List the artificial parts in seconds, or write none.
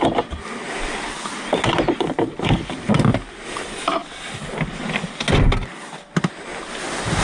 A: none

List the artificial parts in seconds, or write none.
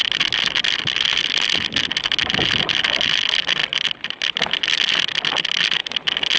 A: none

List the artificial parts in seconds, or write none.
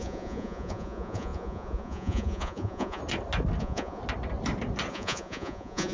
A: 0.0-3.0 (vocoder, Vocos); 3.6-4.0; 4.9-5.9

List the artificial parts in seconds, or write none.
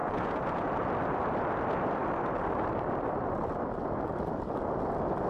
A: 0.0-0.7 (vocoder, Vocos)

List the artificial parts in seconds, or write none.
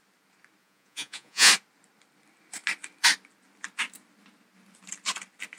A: 0.6-1.5 (vocoder, Vocos)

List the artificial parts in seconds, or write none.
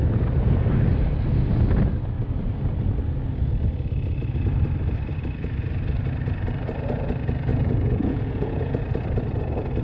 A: 7.5-8.8 (vocoder, Vocos)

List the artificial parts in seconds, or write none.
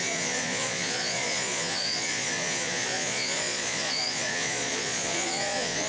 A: 0.0-5.9 (vocoder, Vocos)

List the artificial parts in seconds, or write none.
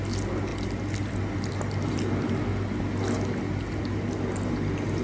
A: none